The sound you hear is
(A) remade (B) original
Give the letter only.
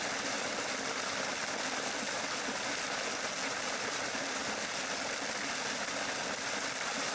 B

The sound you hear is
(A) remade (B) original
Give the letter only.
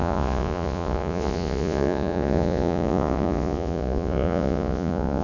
A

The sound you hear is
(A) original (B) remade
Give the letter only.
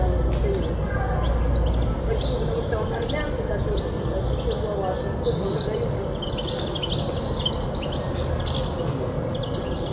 A